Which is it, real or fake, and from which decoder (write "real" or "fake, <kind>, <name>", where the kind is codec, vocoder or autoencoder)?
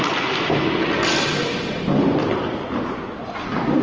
real